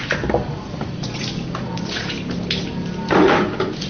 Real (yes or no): yes